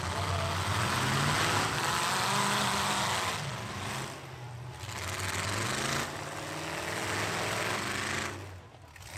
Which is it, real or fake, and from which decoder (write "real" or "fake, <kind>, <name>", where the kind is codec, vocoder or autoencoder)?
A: real